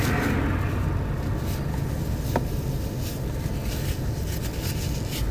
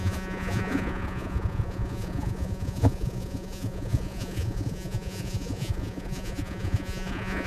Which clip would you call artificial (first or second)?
second